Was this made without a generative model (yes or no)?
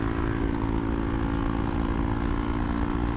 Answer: yes